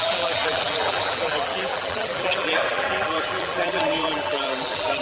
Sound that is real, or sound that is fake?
fake